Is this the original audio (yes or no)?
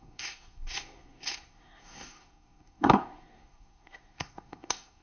no